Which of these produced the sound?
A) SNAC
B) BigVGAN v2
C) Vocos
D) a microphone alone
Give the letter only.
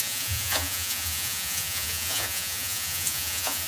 C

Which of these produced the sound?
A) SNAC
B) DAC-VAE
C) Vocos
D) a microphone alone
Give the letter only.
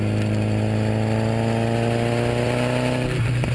D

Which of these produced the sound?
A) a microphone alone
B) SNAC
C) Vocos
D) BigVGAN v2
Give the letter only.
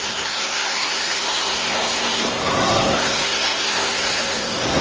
B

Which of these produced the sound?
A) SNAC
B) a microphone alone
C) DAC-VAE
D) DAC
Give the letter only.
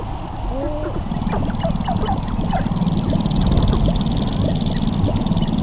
B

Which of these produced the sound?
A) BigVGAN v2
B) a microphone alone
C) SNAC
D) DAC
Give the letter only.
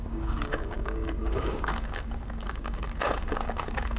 D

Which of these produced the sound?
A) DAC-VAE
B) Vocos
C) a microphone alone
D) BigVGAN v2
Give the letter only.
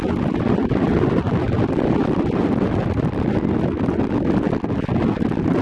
C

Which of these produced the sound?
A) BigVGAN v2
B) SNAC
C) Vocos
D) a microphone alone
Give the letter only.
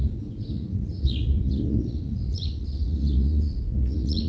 C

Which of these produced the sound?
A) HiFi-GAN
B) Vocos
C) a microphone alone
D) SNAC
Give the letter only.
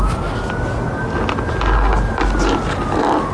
C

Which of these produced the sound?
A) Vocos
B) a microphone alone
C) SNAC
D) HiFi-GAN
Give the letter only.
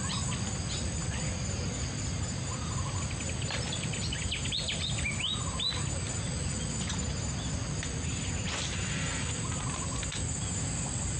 B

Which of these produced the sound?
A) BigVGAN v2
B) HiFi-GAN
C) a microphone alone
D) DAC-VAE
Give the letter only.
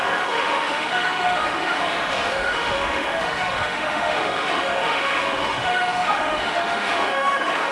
D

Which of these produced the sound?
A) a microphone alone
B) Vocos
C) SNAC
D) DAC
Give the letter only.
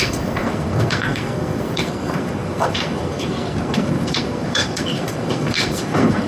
C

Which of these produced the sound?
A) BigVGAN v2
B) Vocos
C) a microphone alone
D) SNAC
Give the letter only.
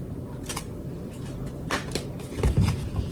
C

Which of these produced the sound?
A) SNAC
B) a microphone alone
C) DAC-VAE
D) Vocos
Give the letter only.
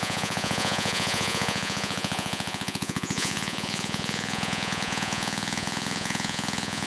D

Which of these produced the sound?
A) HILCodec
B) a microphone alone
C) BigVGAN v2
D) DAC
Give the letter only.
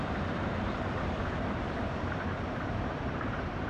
C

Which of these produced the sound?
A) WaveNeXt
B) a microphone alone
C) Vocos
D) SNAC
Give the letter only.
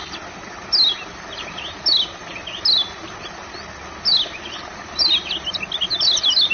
B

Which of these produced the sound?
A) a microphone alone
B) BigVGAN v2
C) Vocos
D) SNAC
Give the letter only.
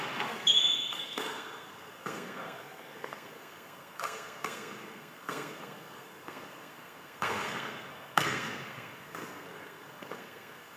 D